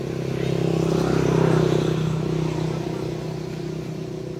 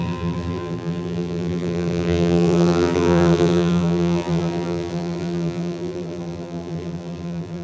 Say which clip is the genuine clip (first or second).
first